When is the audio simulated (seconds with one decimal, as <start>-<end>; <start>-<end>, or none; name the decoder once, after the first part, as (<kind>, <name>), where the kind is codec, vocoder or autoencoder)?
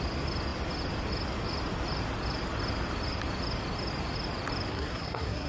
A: 4.7-5.5 (codec, SNAC)